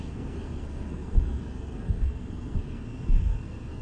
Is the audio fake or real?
fake